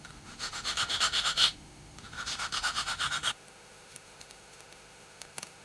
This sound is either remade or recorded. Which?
remade